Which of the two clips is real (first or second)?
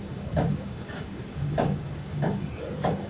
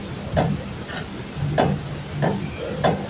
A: second